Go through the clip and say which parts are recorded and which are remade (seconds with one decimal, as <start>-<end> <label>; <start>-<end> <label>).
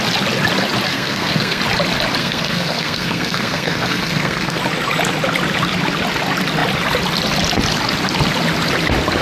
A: 0.0-0.9 recorded; 0.9-1.6 remade; 1.6-2.2 recorded; 2.2-4.6 remade; 4.6-9.2 recorded